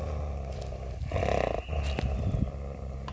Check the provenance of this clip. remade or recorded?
recorded